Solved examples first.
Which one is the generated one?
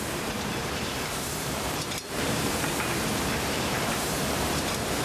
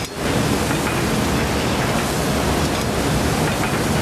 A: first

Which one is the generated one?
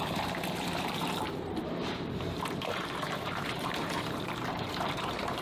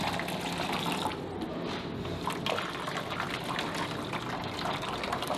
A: first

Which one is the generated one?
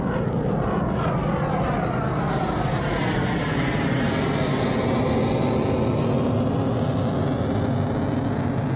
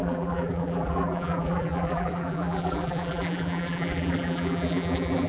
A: second